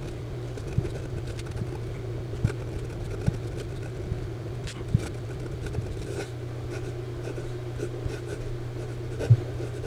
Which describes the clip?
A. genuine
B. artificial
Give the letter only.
A